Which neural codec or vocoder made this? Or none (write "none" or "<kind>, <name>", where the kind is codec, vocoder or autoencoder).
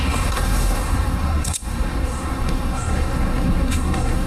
codec, SNAC